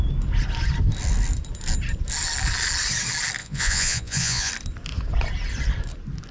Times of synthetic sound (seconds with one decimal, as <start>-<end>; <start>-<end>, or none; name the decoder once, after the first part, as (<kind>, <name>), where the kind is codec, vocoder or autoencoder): 3.4-4.5 (vocoder, Vocos)